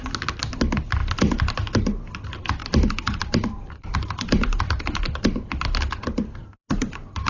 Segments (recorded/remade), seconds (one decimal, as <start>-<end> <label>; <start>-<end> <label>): 0.0-2.6 recorded; 2.6-5.5 remade; 5.5-6.4 recorded; 6.4-7.3 remade